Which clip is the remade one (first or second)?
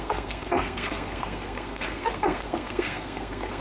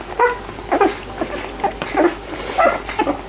first